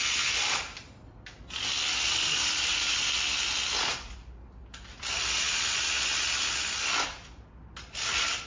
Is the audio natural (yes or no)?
yes